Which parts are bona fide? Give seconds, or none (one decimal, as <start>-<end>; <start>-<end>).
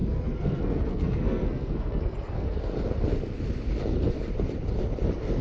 2.6-5.4